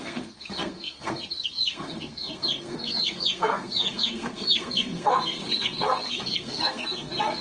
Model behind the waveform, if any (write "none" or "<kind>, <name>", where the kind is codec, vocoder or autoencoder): codec, SNAC